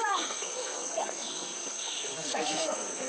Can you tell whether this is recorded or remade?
remade